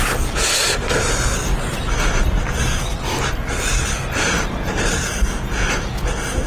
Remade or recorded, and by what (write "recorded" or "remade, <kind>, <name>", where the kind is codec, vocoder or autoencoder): recorded